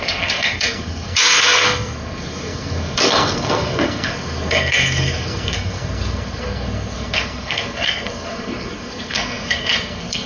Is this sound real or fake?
fake